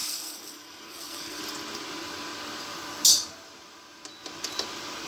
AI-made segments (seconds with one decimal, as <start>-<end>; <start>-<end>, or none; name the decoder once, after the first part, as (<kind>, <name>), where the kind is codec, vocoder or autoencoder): 0.0-1.4 (codec, SNAC)